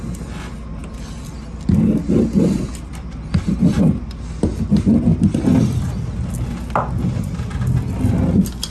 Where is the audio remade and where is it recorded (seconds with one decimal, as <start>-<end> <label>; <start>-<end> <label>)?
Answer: 0.0-8.7 recorded